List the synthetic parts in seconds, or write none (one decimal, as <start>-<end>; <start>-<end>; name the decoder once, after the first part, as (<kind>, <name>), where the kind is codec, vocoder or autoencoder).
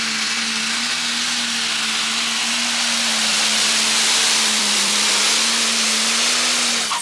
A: 3.3-5.2 (vocoder, BigVGAN v2)